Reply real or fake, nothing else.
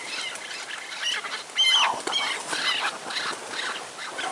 real